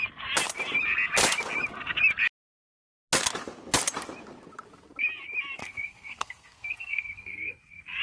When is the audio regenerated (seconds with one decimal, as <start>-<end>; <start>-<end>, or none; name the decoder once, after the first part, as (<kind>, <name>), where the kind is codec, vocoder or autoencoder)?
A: 5.6-8.0 (codec, SNAC)